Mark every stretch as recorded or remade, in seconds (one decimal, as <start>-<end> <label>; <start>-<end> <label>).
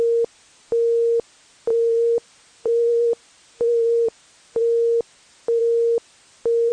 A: 0.0-1.7 recorded; 1.7-4.6 remade; 4.6-6.7 recorded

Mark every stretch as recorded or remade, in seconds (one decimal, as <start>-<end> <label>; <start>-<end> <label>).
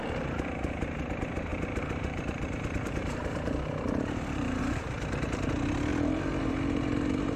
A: 0.0-1.5 recorded; 1.5-4.6 remade; 4.6-5.9 recorded; 5.9-6.5 remade; 6.5-7.4 recorded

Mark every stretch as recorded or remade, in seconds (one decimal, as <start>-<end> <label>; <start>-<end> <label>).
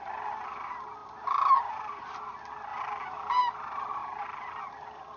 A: 0.0-1.0 recorded; 1.0-2.1 remade; 2.1-4.0 recorded; 4.0-4.6 remade; 4.6-5.2 recorded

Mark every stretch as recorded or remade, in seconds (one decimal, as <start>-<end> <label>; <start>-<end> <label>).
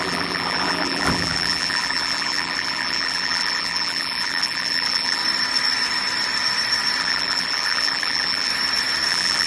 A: 0.0-5.2 remade; 5.2-7.0 recorded; 7.0-8.5 remade; 8.5-9.1 recorded; 9.1-9.5 remade